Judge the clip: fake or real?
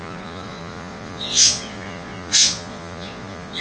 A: fake